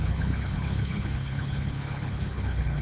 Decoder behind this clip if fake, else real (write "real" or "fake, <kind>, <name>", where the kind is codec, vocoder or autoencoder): fake, codec, HILCodec